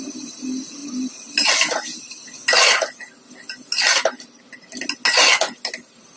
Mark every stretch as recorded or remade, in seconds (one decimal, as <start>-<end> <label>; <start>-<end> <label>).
0.0-6.2 recorded